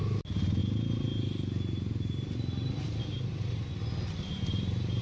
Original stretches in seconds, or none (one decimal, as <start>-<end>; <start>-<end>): 0.0-5.0